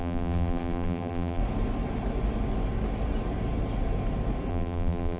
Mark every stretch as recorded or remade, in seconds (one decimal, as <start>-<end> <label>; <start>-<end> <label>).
0.0-1.4 remade; 1.4-4.5 recorded; 4.5-5.2 remade